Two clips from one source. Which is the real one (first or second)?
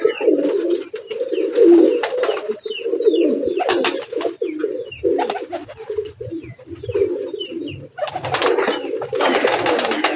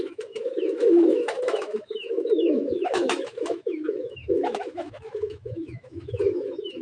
first